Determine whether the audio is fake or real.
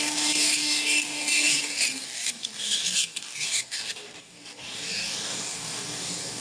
fake